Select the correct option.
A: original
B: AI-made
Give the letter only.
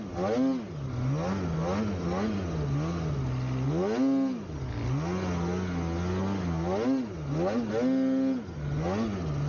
A